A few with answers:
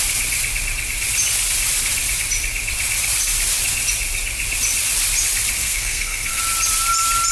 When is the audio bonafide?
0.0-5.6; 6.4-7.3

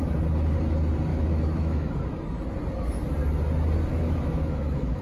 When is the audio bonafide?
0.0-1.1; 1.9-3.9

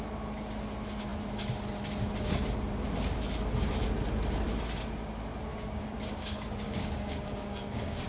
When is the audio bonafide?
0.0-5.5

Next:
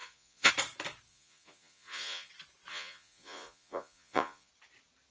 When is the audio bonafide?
0.5-1.1; 2.3-2.7; 4.5-5.1